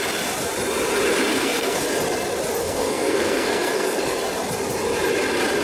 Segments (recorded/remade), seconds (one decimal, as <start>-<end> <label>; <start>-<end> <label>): 0.0-1.3 recorded; 1.3-1.8 remade; 1.8-2.6 recorded; 2.6-4.2 remade; 4.2-5.6 recorded